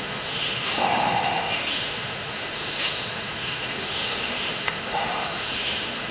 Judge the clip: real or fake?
fake